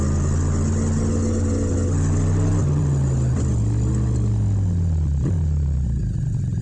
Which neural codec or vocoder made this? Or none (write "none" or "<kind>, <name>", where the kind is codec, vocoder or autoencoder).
none